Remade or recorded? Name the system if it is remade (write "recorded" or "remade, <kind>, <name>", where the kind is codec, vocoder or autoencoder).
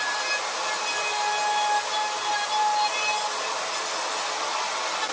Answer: recorded